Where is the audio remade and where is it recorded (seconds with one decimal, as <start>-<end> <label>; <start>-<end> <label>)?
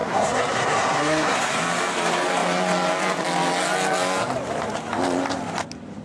0.0-1.6 remade; 1.6-6.0 recorded